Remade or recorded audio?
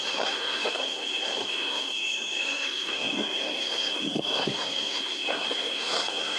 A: remade